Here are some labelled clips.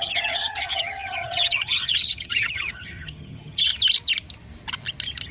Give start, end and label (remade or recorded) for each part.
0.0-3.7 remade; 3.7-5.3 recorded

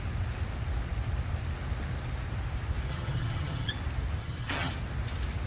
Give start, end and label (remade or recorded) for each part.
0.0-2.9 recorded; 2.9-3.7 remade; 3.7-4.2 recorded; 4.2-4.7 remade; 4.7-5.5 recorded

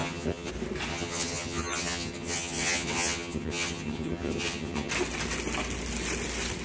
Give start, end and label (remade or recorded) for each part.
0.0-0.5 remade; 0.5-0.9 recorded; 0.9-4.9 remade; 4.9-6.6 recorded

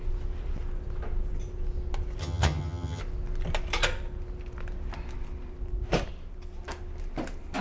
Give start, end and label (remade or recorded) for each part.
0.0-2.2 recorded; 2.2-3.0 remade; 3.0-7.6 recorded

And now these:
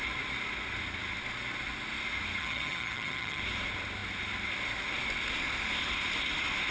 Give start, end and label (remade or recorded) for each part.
0.0-2.4 recorded; 2.4-3.4 remade; 3.4-6.7 recorded

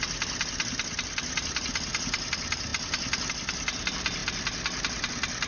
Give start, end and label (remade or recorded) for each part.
0.0-5.5 recorded